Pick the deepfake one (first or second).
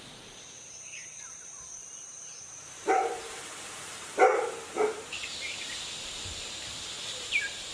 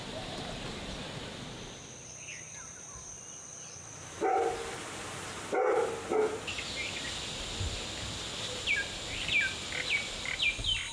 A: first